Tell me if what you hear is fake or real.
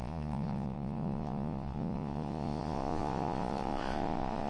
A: fake